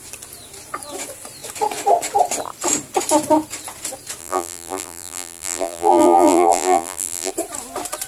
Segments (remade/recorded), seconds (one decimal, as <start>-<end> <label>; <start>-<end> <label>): 0.0-4.2 recorded; 4.2-7.3 remade; 7.3-8.1 recorded